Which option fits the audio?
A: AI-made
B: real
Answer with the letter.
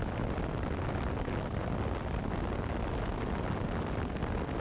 B